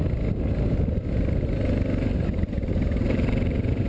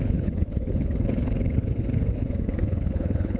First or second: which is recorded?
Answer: first